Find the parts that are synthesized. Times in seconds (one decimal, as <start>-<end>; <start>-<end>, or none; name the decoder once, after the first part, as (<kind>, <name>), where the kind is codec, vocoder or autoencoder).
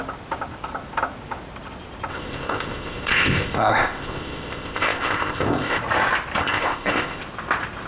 2.1-5.8 (codec, ZipCodec); 6.4-7.2